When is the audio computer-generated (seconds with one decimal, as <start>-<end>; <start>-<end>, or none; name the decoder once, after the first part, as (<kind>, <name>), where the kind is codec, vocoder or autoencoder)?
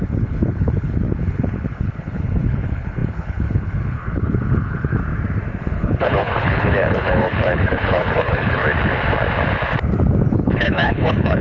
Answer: 0.0-5.0 (codec, HILCodec); 5.6-8.6; 10.3-11.4